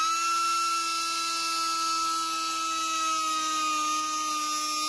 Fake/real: real